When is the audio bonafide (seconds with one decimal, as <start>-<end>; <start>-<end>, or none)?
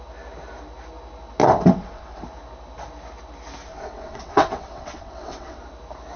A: 0.0-1.4; 2.2-3.7; 5.6-6.2